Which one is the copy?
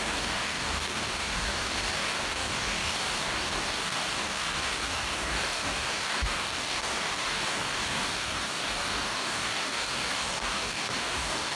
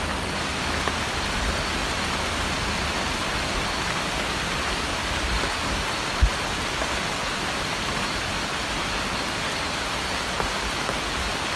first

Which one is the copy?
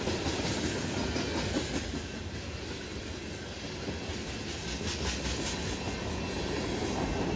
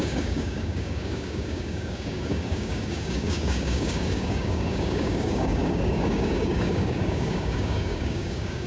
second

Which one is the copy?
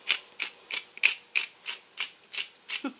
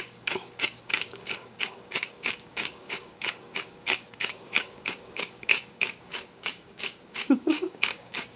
second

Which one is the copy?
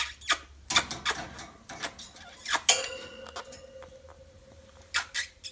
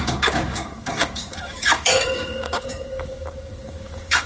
second